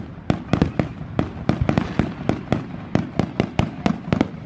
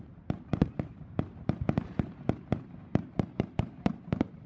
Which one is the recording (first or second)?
first